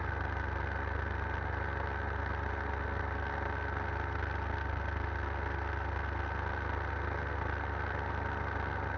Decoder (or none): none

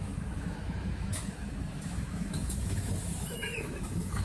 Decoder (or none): autoencoder, DAC-VAE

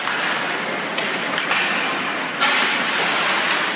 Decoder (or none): none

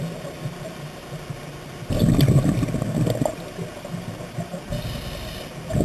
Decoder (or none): none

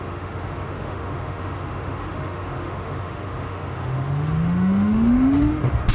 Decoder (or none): autoencoder, DAC-VAE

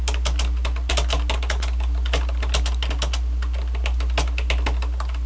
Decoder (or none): none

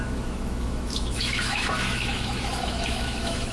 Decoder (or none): autoencoder, DAC-VAE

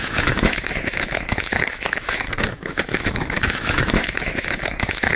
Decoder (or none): autoencoder, DAC-VAE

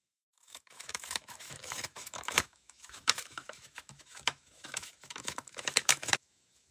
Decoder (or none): autoencoder, DAC-VAE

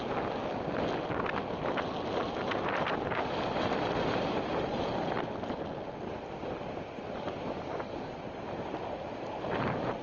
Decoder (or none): none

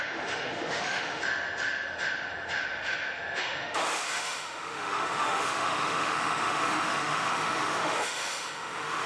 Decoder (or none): autoencoder, DAC-VAE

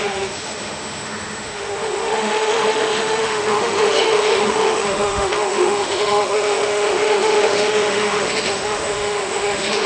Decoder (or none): autoencoder, DAC-VAE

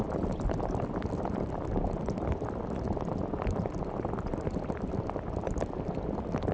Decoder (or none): none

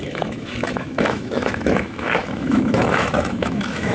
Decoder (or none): autoencoder, DAC-VAE